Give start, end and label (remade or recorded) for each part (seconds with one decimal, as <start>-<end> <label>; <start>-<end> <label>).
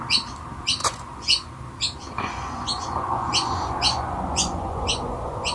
0.0-0.8 recorded; 0.8-1.5 remade; 1.5-2.0 recorded; 2.0-5.5 remade